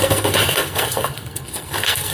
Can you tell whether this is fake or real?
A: fake